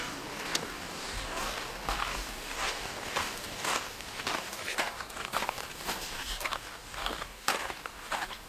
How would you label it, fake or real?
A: fake